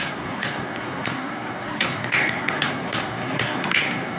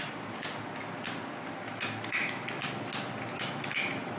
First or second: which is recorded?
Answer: second